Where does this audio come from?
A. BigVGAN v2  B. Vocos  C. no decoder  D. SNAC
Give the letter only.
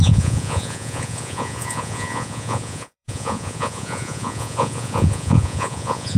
B